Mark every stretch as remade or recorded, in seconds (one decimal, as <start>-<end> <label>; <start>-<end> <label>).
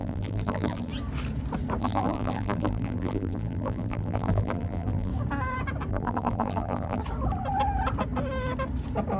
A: 0.0-0.9 remade; 0.9-1.8 recorded; 1.8-5.1 remade; 5.1-5.9 recorded; 5.9-7.0 remade; 7.0-9.2 recorded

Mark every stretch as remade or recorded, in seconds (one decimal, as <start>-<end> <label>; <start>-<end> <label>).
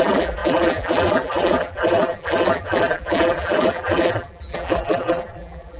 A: 0.0-5.8 remade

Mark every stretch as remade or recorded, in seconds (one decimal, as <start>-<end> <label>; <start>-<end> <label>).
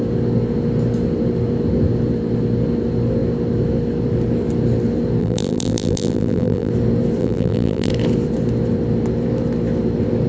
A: 0.0-5.2 recorded; 5.2-6.7 remade; 6.7-7.2 recorded; 7.2-7.9 remade; 7.9-10.3 recorded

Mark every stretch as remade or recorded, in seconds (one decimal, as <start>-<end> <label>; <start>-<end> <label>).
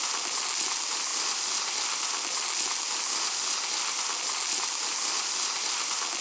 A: 0.0-6.2 recorded